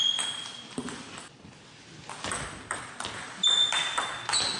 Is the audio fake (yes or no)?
no